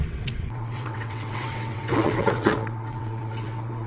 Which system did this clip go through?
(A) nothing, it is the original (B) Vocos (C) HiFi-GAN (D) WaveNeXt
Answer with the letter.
D